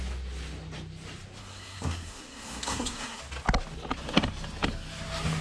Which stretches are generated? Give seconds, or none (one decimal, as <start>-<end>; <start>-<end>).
1.4-3.2